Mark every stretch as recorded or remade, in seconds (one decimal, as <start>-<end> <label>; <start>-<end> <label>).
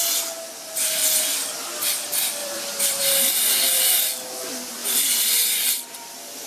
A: 0.0-2.4 recorded; 2.4-3.0 remade; 3.0-4.8 recorded; 4.8-6.5 remade